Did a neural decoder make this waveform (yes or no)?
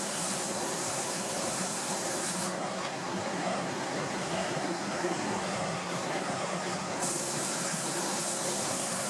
yes